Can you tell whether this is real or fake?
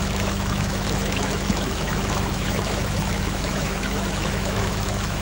fake